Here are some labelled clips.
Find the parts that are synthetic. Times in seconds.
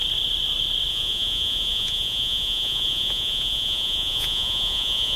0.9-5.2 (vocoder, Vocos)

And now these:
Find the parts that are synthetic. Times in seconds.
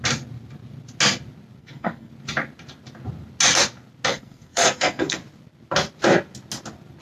1.6-2.1 (codec, SNAC); 4.1-5.2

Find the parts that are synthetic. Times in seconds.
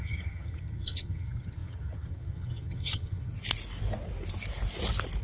0.0-3.3 (vocoder, HiFi-GAN)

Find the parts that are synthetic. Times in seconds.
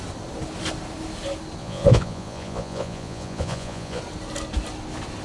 1.6-4.0 (vocoder, Vocos)